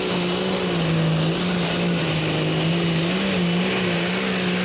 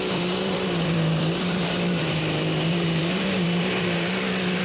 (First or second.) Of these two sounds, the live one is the first